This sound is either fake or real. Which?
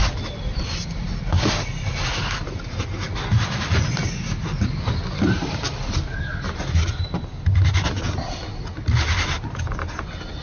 real